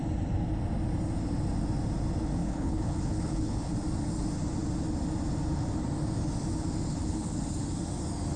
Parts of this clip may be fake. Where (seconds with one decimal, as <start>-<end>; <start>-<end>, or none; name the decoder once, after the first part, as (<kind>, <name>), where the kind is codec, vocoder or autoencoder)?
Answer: 2.4-3.7 (codec, HILCodec); 6.9-7.4